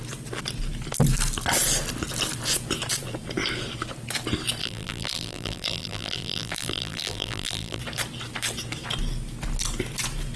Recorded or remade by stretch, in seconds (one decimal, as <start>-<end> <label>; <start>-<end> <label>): 0.0-4.6 recorded; 4.6-7.8 remade; 7.8-10.4 recorded